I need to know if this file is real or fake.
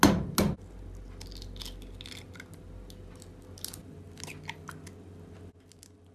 real